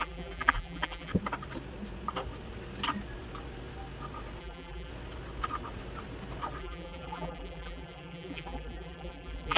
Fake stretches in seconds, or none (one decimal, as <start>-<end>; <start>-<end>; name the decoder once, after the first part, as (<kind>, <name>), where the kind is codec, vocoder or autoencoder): 0.0-1.1 (vocoder, BigVGAN v2); 4.4-4.9; 6.6-9.6